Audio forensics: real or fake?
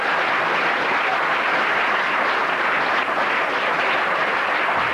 real